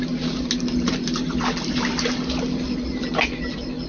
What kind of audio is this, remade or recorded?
recorded